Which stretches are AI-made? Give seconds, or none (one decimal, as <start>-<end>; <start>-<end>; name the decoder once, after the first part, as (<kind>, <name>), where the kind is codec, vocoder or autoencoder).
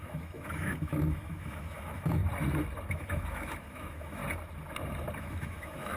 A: 0.0-2.2 (autoencoder, DAC-VAE); 2.9-4.2; 5.2-6.0